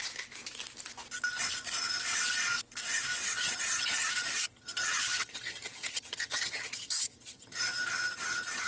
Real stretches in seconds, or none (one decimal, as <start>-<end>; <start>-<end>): 0.0-3.2